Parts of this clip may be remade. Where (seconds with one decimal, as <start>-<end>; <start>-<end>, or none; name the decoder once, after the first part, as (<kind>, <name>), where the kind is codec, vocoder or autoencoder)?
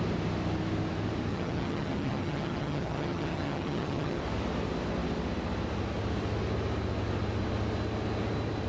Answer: 1.3-4.2 (vocoder, HiFi-GAN)